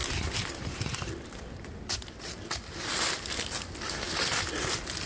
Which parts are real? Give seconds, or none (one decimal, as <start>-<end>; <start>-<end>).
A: 0.0-5.1